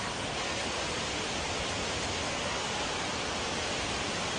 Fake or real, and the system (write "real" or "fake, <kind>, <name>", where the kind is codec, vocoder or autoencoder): real